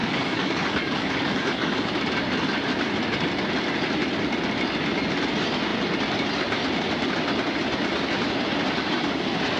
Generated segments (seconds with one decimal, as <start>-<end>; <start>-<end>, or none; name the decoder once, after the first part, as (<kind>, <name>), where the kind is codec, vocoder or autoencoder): 0.0-1.9 (codec, DAC)